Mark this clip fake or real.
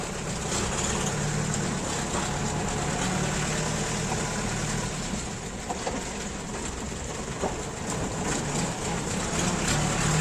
real